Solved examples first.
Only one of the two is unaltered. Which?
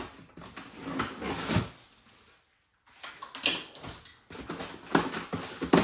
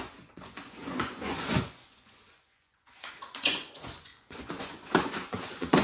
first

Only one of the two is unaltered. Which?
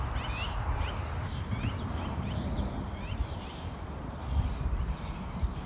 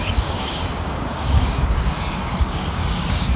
first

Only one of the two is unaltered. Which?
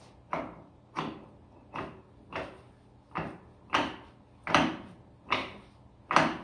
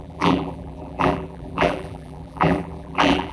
first